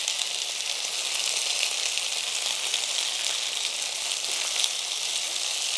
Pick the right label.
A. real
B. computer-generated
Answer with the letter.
A